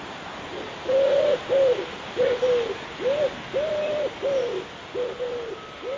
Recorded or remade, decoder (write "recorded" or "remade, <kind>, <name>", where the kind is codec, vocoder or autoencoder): recorded